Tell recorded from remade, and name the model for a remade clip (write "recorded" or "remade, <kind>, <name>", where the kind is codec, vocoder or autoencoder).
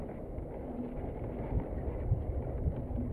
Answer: recorded